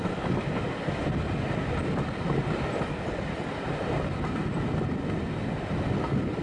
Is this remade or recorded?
recorded